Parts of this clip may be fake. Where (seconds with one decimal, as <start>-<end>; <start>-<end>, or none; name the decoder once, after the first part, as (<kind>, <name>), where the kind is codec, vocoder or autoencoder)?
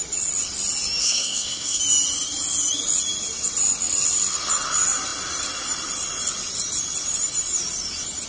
1.0-1.8 (codec, SNAC)